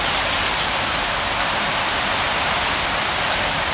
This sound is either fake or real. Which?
real